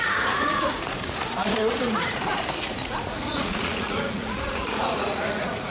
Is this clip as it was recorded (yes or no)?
no